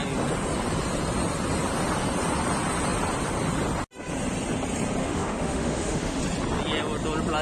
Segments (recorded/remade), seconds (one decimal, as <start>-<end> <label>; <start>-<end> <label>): 0.0-5.0 recorded; 5.0-6.2 remade; 6.2-7.4 recorded